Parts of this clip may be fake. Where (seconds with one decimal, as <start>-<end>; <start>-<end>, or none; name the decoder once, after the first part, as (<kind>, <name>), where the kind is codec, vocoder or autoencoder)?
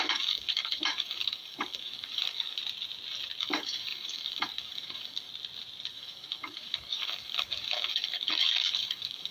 0.0-2.6 (codec, DAC); 3.4-5.3; 5.9-9.3